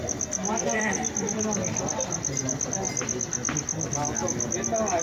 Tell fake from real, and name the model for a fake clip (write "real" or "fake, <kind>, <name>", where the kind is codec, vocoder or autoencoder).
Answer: real